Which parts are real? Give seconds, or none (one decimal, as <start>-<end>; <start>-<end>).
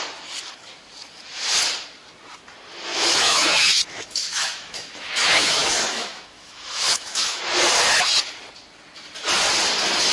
0.0-2.9; 7.4-10.1